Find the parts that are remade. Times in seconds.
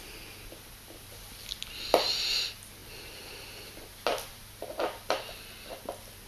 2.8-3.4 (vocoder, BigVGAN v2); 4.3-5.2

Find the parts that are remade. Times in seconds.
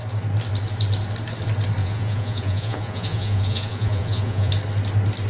1.8-4.5 (vocoder, Vocos)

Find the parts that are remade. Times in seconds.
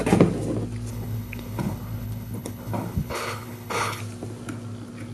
0.9-4.0 (codec, HILCodec)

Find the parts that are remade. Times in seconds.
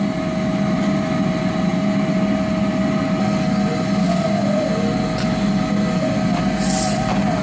none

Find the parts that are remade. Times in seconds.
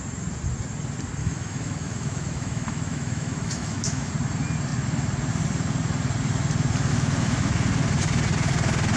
1.2-4.1 (autoencoder, DAC-VAE); 6.9-7.4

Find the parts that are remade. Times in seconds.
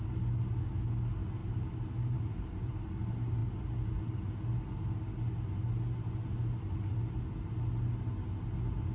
1.4-2.9 (vocoder, BigVGAN v2)